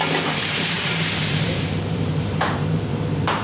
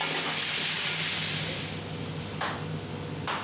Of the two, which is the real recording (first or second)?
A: second